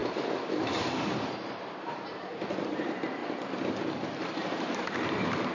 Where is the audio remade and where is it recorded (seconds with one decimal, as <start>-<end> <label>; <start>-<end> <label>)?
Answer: 0.0-3.2 remade; 3.2-4.2 recorded; 4.2-5.5 remade